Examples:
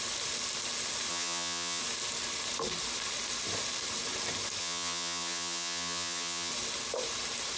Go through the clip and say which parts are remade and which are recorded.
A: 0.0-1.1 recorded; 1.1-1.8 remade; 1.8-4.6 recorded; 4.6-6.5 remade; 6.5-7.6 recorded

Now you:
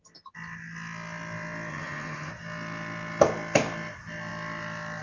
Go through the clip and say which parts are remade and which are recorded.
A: 0.0-1.7 recorded; 1.7-2.3 remade; 2.3-5.0 recorded